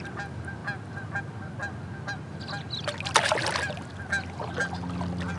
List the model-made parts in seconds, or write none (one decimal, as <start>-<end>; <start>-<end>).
none

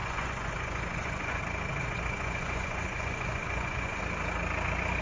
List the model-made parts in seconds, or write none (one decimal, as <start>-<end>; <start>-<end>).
0.0-1.4; 1.8-4.0

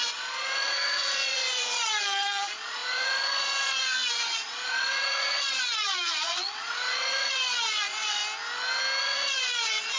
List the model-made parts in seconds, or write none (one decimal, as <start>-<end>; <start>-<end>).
0.0-8.2; 9.0-10.0

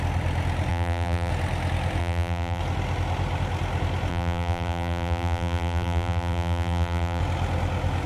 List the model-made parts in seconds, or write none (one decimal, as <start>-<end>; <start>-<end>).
0.7-1.3; 2.0-2.6; 4.1-7.2

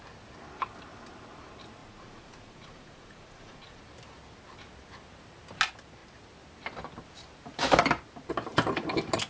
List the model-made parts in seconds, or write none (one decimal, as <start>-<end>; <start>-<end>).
1.8-3.8

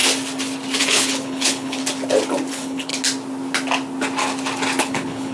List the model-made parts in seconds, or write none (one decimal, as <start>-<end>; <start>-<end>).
0.8-1.8; 2.5-2.9; 4.8-5.3

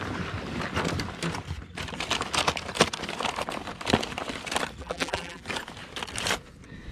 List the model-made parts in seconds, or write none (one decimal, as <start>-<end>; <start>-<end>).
4.8-5.4